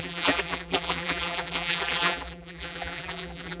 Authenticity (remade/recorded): remade